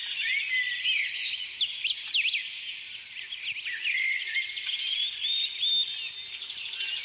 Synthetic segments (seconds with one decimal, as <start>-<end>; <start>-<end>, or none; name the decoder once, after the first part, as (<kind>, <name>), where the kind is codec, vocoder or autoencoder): none

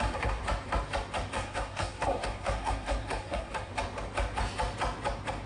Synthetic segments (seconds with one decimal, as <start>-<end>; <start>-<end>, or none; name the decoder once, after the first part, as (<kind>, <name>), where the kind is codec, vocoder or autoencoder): 0.0-0.4 (codec, SNAC); 1.3-3.7